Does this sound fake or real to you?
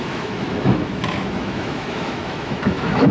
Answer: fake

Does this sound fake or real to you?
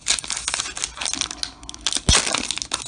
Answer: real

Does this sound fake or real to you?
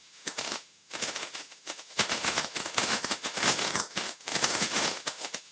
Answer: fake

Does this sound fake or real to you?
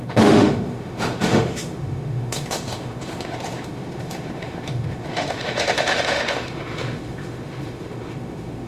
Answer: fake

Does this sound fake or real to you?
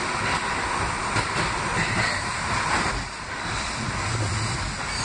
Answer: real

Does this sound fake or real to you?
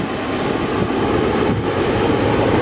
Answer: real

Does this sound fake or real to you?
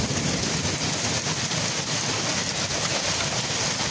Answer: real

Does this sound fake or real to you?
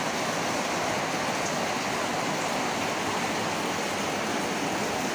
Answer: real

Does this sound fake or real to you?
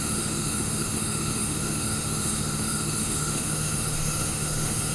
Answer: fake